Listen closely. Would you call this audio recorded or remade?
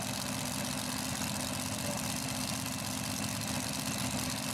recorded